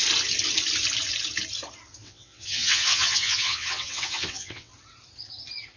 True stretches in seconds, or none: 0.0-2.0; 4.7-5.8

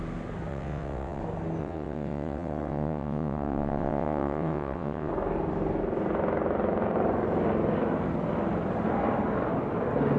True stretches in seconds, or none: 0.0-0.5; 1.2-1.6; 5.1-10.2